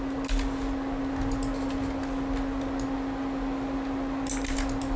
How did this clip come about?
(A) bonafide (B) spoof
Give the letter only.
A